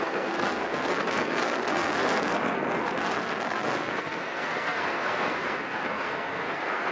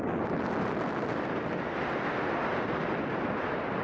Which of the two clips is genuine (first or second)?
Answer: second